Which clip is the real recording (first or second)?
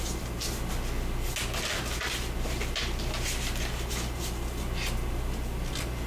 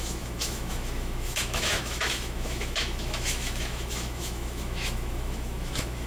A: first